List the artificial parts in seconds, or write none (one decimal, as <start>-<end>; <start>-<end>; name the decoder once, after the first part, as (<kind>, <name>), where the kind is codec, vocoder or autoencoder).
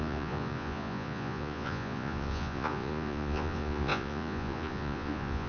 0.0-5.5 (vocoder, Vocos)